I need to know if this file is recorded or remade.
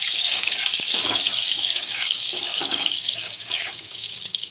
remade